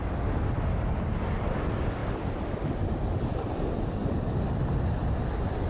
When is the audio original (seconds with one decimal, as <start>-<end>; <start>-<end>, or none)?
0.0-5.7